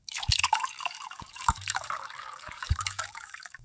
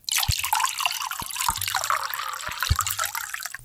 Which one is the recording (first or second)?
second